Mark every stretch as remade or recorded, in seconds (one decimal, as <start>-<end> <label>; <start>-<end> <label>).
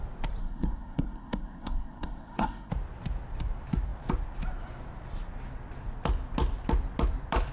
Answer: 0.0-0.4 recorded; 0.4-2.7 remade; 2.7-7.5 recorded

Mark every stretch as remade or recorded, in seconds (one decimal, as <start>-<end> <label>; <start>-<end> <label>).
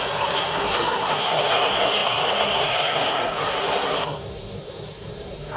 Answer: 0.0-5.6 remade